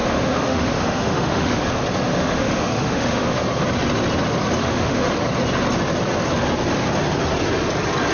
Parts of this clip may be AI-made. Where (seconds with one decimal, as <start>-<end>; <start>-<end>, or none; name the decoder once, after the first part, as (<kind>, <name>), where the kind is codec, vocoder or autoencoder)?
0.0-1.6 (autoencoder, DAC-VAE); 2.1-3.4; 4.6-5.1